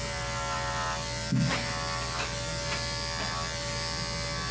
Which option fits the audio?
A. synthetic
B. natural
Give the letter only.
B